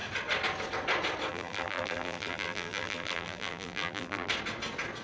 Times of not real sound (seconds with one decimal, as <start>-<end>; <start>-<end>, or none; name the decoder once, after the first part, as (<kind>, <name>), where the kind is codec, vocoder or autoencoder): 1.3-4.3 (vocoder, BigVGAN v2)